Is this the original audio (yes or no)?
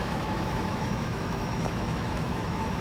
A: no